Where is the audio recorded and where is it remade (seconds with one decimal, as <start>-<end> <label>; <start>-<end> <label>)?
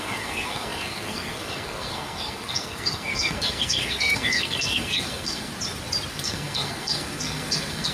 0.0-5.5 remade; 5.5-6.1 recorded; 6.1-7.9 remade